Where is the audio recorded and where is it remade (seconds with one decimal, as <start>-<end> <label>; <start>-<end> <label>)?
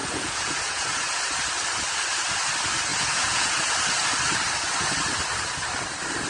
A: 0.0-1.2 remade; 1.2-2.9 recorded; 2.9-3.7 remade; 3.7-6.3 recorded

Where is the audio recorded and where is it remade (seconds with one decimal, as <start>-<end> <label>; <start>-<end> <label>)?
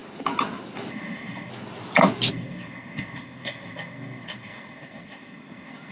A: 0.0-0.9 recorded; 0.9-1.5 remade; 1.5-2.3 recorded; 2.3-5.9 remade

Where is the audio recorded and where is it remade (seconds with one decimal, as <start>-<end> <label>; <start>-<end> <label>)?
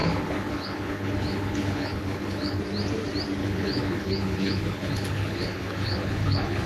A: 0.0-2.6 remade; 2.6-3.4 recorded; 3.4-6.7 remade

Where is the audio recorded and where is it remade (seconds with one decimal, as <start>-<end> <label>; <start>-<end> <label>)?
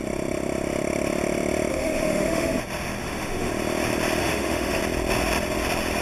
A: 0.0-1.7 recorded; 1.7-2.6 remade; 2.6-3.0 recorded; 3.0-3.5 remade; 3.5-4.2 recorded; 4.2-4.8 remade; 4.8-6.0 recorded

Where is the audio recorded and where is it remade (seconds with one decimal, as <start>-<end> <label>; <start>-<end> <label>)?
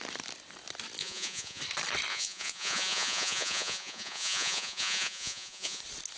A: 0.0-1.0 recorded; 1.0-1.6 remade; 1.6-2.1 recorded; 2.1-5.8 remade; 5.8-6.2 recorded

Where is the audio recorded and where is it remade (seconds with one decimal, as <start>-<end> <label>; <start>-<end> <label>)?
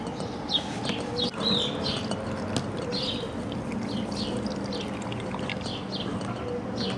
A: 0.0-7.0 recorded